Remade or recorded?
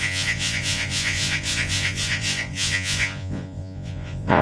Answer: remade